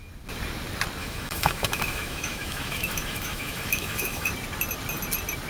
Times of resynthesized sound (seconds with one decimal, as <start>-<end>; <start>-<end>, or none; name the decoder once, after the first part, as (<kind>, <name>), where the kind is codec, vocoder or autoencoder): 1.0-4.3 (autoencoder, DAC-VAE)